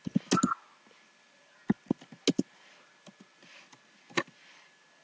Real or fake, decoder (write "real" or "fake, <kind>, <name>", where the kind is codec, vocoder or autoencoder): real